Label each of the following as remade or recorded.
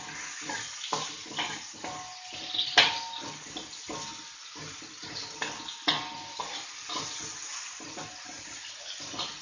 recorded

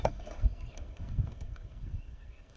remade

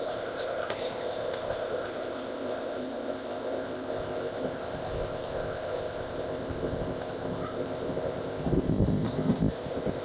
remade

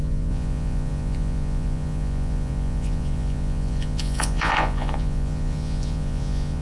remade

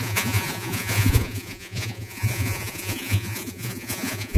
remade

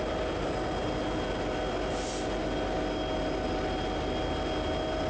recorded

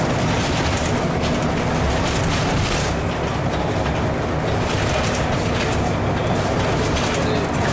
recorded